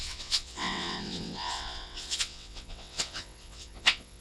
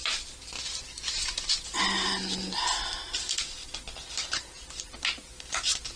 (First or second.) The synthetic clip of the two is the first